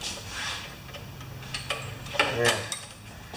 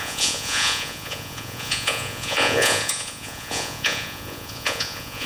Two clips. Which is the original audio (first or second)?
first